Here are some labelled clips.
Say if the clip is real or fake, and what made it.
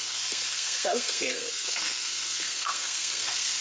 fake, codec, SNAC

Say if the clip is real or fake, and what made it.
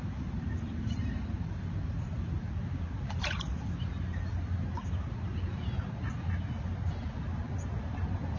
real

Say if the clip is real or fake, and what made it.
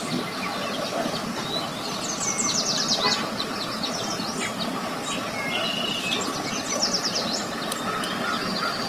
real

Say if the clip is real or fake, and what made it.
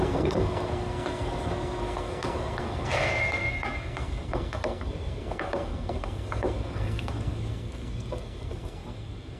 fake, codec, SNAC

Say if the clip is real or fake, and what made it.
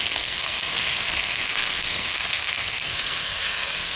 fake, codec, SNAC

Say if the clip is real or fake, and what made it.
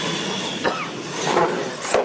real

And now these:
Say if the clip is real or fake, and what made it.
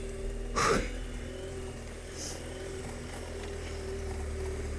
real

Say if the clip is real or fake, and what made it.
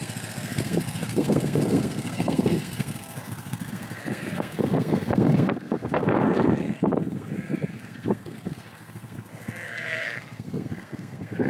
fake, codec, SNAC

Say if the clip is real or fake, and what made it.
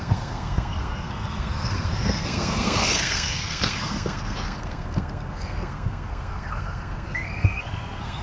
fake, codec, SNAC